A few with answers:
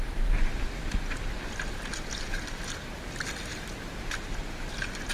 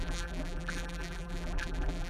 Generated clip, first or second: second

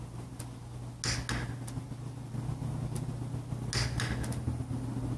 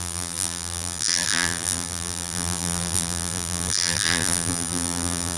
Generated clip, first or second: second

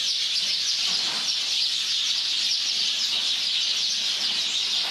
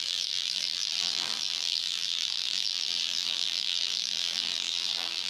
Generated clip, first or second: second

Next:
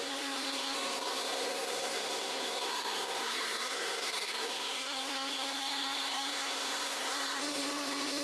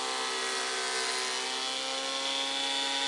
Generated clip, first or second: first